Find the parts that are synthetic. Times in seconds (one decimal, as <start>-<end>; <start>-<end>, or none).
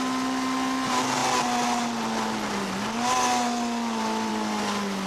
none